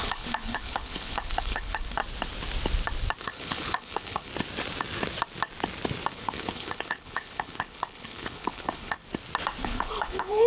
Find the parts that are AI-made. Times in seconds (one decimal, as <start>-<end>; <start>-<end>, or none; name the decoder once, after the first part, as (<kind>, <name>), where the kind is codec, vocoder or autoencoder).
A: 0.0-2.0 (codec, HILCodec); 3.2-4.3; 6.1-9.0; 9.6-10.5